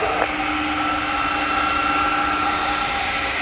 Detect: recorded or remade recorded